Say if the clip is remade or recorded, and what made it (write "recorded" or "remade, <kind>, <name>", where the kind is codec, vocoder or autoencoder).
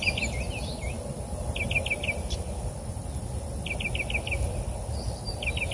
recorded